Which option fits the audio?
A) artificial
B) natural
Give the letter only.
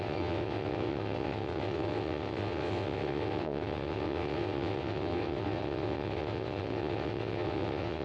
A